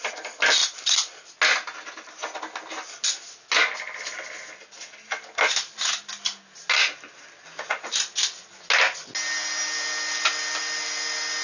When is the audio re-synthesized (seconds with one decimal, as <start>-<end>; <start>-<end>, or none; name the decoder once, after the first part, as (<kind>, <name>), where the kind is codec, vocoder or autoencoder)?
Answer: none